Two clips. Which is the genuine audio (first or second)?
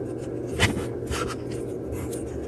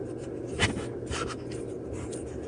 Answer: first